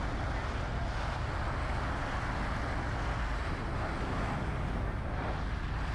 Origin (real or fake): real